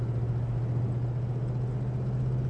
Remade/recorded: recorded